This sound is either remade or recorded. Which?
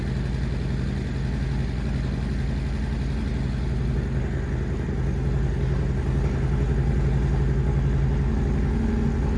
recorded